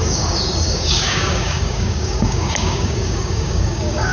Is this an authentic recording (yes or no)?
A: no